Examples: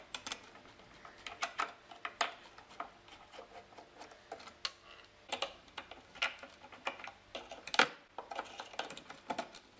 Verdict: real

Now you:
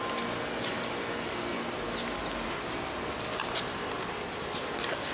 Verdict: real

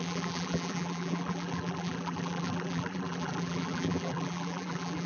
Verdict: fake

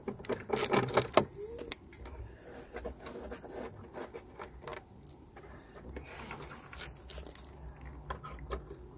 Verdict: real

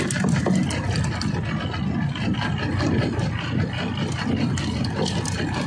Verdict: real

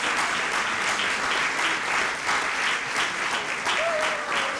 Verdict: real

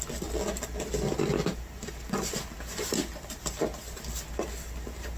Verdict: real